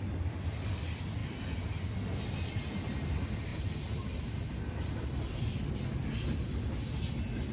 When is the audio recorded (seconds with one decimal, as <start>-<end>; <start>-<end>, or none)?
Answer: 0.0-7.5